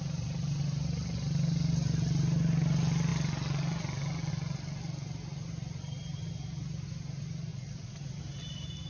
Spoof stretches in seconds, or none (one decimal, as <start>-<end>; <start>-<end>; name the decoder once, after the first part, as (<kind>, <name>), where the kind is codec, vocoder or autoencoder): 7.5-8.2 (vocoder, Vocos)